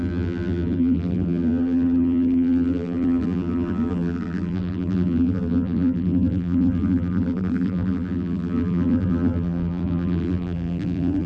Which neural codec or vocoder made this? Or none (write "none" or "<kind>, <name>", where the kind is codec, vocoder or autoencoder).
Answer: vocoder, BigVGAN v2